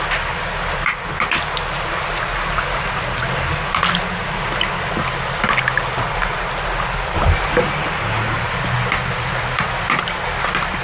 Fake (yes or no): no